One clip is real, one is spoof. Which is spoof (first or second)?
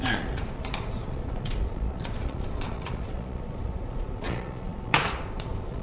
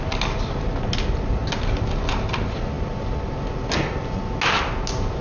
first